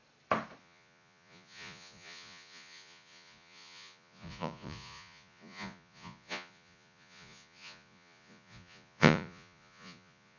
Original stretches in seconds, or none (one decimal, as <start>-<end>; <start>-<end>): 0.0-0.6